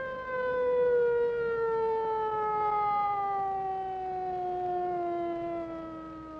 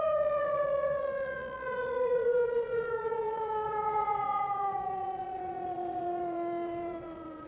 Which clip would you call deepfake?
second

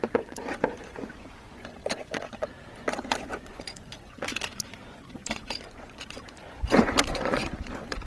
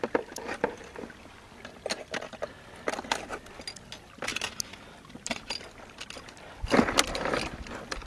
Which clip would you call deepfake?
first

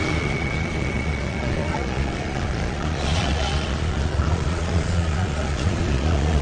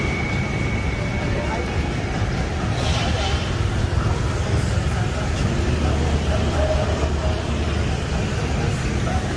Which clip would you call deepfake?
first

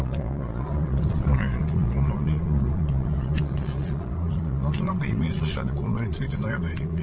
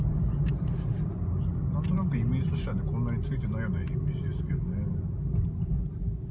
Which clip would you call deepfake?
first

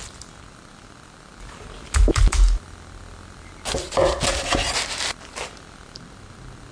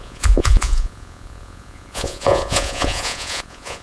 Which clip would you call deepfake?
second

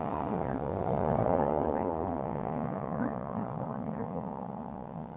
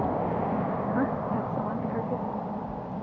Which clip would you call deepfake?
first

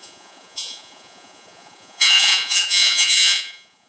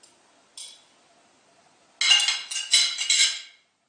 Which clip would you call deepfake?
first